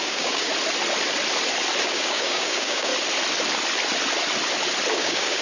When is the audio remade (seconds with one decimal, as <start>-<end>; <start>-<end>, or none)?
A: 0.0-0.5; 1.8-2.9; 4.9-5.4